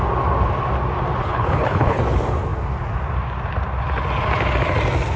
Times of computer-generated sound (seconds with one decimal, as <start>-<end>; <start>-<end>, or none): 1.2-2.0